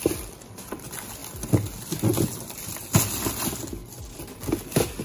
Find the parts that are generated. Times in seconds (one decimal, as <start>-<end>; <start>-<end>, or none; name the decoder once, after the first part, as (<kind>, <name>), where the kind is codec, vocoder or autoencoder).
none